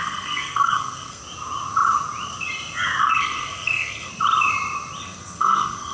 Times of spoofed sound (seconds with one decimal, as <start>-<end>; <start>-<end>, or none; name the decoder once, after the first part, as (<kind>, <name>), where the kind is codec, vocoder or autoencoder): 0.0-1.2 (codec, SNAC); 3.0-4.1; 5.0-5.9